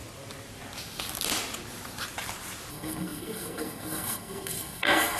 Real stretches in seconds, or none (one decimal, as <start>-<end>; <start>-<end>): 0.0-2.7